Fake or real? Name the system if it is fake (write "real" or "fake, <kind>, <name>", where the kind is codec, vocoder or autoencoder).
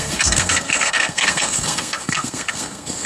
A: fake, codec, SNAC